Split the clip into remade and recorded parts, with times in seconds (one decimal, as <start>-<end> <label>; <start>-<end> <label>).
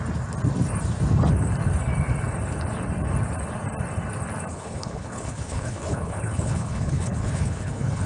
0.0-4.5 recorded; 4.5-8.1 remade